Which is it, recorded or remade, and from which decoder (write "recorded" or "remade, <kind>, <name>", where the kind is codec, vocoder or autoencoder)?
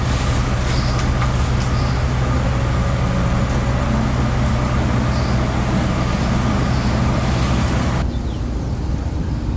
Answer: recorded